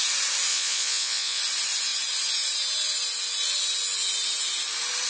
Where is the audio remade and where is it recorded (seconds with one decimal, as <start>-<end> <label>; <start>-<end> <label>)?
0.0-0.5 recorded; 0.5-1.4 remade; 1.4-5.1 recorded